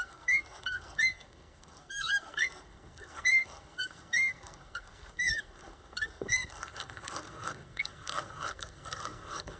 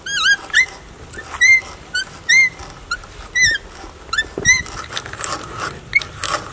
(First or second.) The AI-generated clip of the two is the first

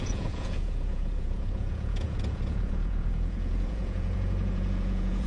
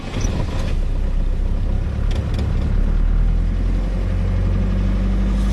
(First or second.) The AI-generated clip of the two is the first